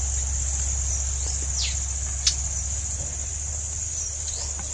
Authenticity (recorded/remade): recorded